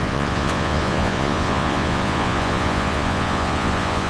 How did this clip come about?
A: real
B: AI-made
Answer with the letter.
B